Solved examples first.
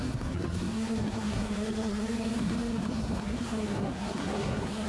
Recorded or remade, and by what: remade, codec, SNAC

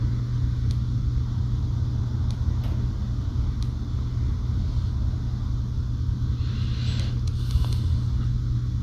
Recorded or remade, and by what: recorded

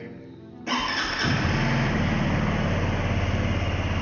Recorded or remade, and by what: recorded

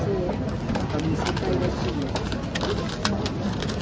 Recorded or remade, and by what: recorded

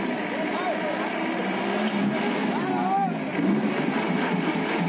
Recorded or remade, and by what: recorded